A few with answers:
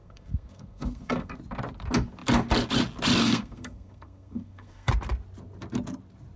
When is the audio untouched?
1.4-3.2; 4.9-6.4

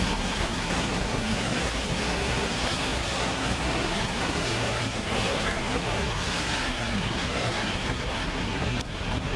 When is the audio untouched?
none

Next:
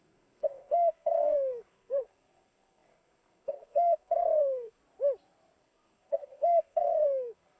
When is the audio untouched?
4.8-5.6